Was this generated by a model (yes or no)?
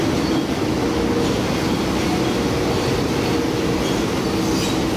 no